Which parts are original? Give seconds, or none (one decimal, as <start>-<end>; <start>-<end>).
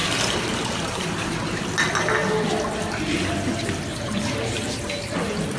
1.4-3.9; 4.9-5.6